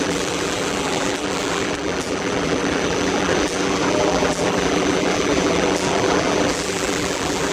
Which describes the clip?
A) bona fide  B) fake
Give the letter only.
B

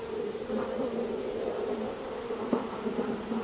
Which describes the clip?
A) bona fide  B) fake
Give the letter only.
B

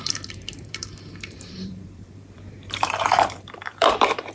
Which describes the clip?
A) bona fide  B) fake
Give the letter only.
B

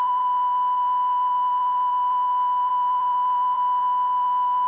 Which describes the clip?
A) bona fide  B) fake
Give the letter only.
B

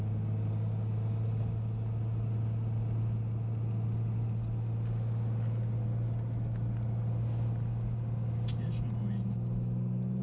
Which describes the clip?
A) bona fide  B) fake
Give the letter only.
A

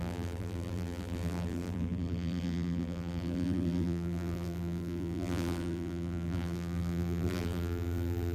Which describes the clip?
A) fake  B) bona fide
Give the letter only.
A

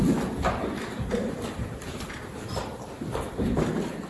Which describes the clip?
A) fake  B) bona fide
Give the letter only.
A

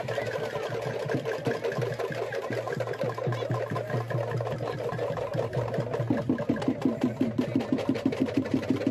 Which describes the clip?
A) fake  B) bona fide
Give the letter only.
B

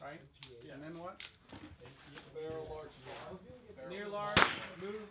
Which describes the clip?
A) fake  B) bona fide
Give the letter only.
B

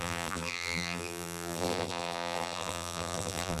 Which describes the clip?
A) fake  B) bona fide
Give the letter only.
A